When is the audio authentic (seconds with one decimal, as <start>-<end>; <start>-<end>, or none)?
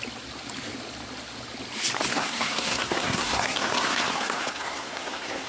0.0-2.1